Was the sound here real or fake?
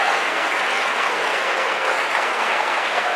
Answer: fake